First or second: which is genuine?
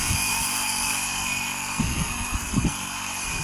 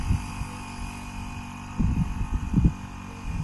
second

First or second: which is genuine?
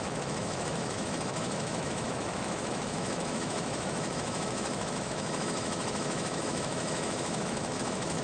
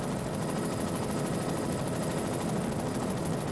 second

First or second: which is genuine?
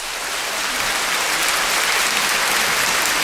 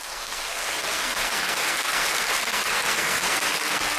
first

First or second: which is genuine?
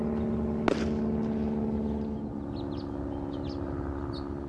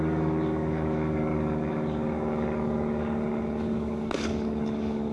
first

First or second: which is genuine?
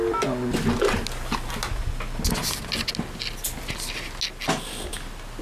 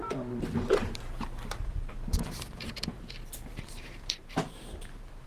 first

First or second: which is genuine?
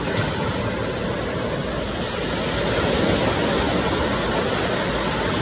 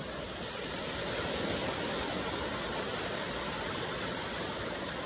first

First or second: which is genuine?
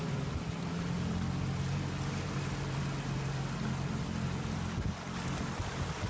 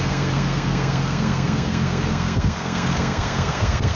first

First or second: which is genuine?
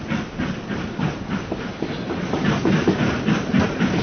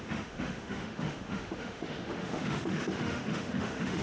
first